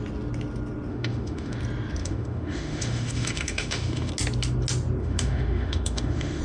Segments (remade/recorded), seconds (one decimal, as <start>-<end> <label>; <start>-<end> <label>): 0.0-0.9 recorded; 0.9-1.6 remade; 1.6-2.0 recorded; 2.0-4.1 remade; 4.1-5.0 recorded; 5.0-6.4 remade